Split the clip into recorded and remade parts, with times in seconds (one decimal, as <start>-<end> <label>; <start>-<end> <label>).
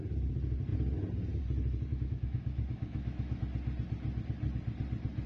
0.0-1.9 recorded; 1.9-3.4 remade; 3.4-5.3 recorded